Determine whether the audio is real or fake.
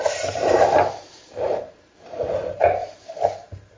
fake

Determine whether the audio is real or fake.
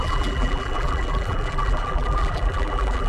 fake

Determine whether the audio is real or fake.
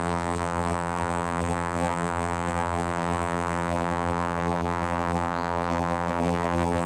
fake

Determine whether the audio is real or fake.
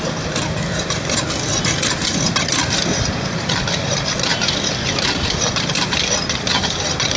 fake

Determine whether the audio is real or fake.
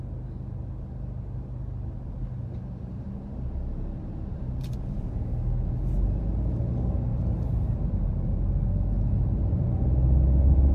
real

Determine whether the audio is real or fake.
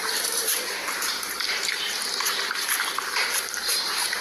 fake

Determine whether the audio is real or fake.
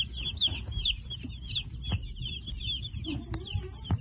real